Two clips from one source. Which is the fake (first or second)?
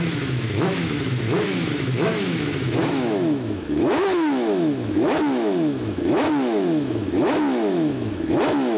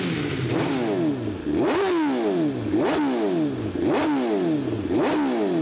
first